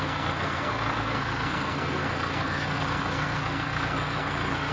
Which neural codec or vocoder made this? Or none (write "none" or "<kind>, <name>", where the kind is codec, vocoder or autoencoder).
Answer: codec, SNAC